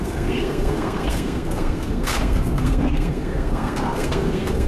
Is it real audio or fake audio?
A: fake